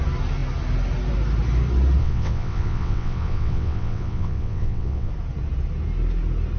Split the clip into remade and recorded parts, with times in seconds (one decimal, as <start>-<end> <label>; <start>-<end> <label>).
0.0-2.0 recorded; 2.0-5.1 remade; 5.1-6.6 recorded